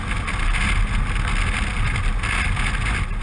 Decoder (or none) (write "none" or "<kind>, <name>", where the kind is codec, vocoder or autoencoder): none